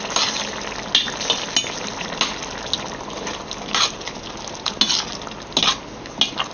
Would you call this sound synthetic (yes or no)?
no